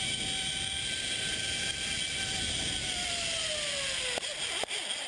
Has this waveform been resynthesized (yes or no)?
no